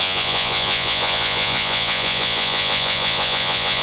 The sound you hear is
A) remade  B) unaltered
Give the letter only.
A